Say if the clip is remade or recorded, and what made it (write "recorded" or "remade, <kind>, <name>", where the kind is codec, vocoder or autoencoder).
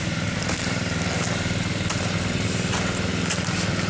recorded